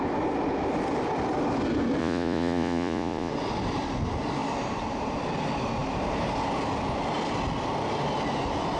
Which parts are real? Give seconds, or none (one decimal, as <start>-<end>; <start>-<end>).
0.0-2.0; 3.3-8.8